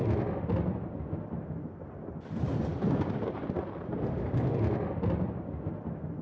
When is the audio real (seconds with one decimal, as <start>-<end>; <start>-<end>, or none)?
0.0-6.2